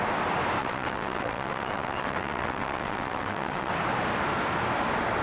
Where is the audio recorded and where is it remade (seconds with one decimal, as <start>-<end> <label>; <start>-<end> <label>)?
0.0-0.6 recorded; 0.6-3.7 remade; 3.7-5.2 recorded